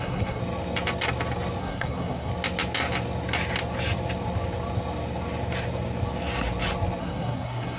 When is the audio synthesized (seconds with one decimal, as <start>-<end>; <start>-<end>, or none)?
0.0-0.4; 1.6-2.3; 7.0-7.8